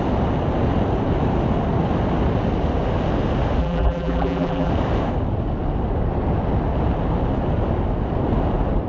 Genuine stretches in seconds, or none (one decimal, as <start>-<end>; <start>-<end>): 0.0-3.6; 4.7-8.9